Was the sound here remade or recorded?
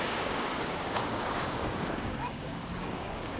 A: remade